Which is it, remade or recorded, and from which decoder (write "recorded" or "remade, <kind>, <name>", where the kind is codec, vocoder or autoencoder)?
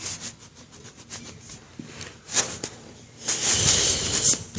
recorded